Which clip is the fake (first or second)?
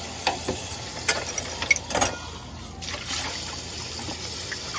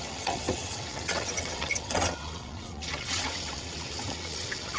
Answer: second